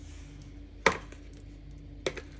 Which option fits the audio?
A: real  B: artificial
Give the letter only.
A